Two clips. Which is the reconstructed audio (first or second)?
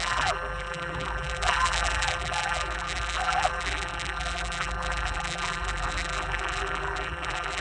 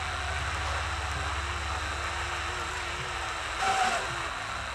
first